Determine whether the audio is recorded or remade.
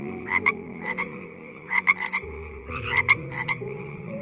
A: remade